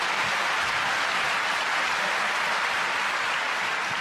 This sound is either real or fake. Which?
real